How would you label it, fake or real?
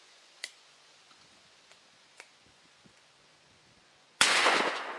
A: fake